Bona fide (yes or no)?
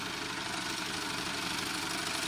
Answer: yes